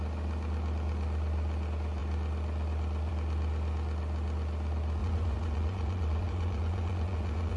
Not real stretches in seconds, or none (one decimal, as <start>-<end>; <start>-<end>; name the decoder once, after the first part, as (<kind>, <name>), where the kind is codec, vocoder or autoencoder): 5.0-7.6 (vocoder, Vocos)